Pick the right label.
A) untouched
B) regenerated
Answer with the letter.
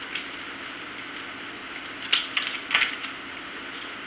A